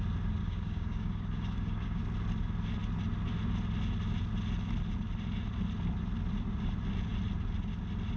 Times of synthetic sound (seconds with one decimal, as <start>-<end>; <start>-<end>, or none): 0.4-2.0